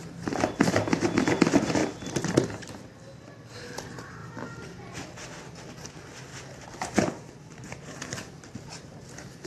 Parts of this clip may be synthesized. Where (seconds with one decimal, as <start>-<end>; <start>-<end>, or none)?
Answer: 6.3-9.5